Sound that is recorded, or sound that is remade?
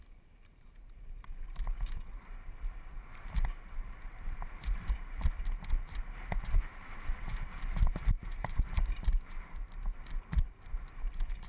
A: remade